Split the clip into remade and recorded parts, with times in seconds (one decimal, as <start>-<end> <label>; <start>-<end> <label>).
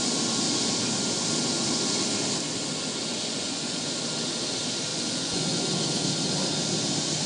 0.0-3.1 recorded; 3.1-3.9 remade; 3.9-4.9 recorded; 4.9-5.6 remade; 5.6-7.3 recorded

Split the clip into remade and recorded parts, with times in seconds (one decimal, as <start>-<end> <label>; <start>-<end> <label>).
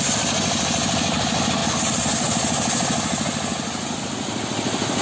0.0-5.0 recorded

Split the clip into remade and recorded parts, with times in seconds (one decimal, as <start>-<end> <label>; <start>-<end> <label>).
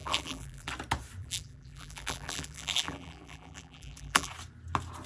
0.0-0.7 remade; 0.7-1.2 recorded; 1.2-4.3 remade; 4.3-5.1 recorded